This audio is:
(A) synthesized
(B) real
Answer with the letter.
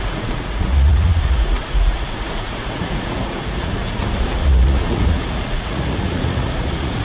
A